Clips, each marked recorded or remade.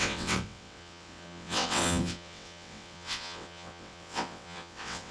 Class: remade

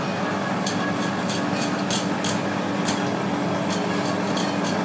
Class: recorded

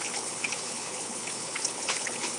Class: remade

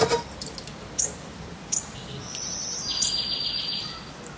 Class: recorded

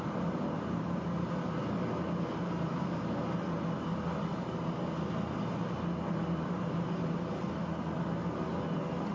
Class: recorded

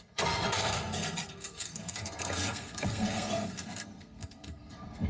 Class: remade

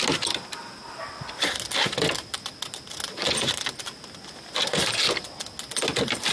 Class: recorded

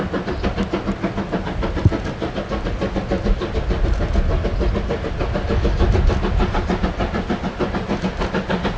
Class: recorded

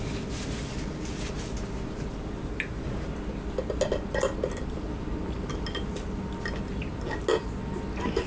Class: recorded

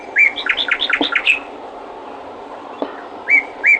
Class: recorded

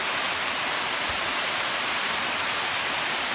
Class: recorded